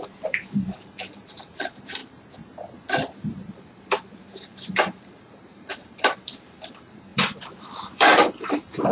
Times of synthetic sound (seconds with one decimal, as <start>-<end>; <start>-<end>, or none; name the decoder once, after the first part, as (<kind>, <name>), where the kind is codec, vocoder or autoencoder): 0.0-2.0 (vocoder, BigVGAN v2); 3.2-8.9